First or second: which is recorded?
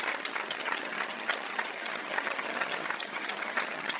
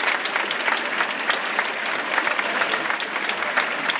second